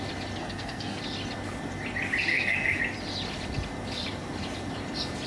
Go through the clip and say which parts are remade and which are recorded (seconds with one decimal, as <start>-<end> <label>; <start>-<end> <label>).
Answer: 0.0-0.4 recorded; 0.4-1.0 remade; 1.0-2.3 recorded; 2.3-2.8 remade; 2.8-5.3 recorded